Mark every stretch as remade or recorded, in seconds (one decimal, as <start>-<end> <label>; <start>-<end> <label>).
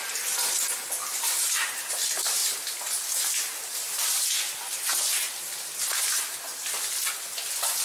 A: 0.0-1.0 recorded; 1.0-1.9 remade; 1.9-7.8 recorded